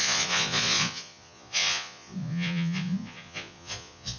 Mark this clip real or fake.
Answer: fake